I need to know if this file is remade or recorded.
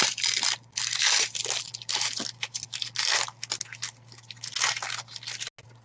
recorded